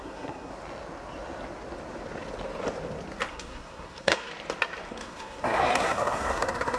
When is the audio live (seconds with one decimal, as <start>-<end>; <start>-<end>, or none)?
0.5-3.3; 4.3-4.9